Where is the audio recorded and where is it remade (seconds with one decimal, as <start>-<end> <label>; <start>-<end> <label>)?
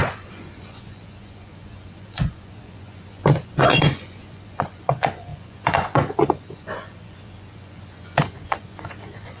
0.0-9.4 remade